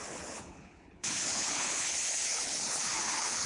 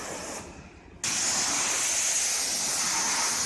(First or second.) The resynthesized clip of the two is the first